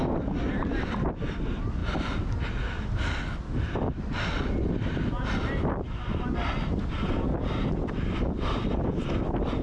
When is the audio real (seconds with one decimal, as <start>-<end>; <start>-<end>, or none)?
0.0-9.6